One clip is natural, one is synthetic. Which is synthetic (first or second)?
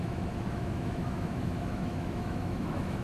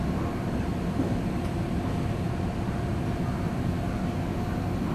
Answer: first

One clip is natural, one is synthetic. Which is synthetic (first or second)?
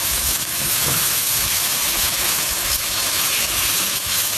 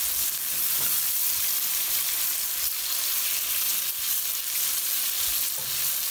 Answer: first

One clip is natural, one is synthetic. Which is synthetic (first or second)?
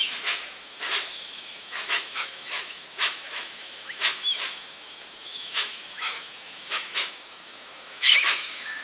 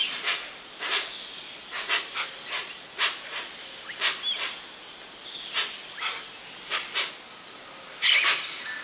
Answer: first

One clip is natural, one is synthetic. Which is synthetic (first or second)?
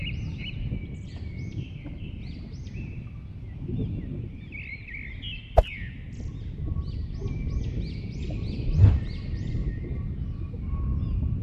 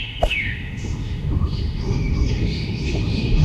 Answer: second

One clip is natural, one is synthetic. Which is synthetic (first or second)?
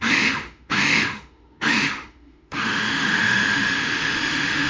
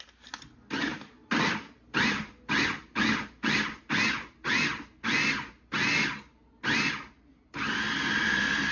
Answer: first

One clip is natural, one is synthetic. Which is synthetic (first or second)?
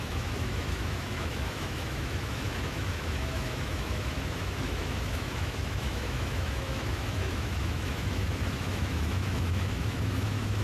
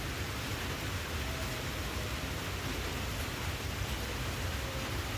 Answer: first